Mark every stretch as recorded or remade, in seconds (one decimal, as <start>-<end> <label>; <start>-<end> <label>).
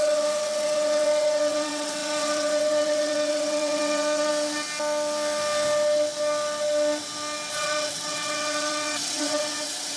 0.0-4.3 remade; 4.3-7.5 recorded; 7.5-10.0 remade